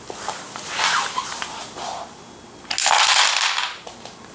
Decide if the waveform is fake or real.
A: real